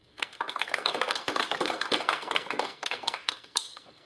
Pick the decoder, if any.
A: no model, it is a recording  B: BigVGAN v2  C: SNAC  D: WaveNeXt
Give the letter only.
C